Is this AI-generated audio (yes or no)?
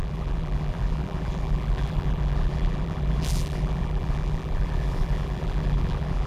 yes